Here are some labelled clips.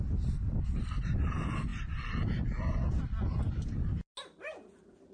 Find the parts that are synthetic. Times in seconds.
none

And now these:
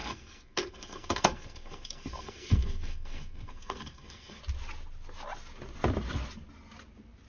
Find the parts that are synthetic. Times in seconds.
0.0-4.4 (codec, SNAC)

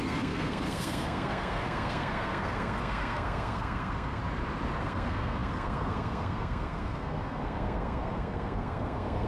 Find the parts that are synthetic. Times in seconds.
0.0-4.2 (codec, SNAC); 4.8-9.3